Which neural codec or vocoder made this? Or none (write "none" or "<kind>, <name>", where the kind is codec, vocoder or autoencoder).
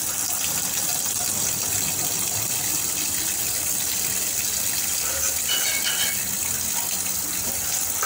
none